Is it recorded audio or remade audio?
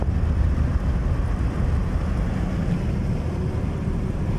recorded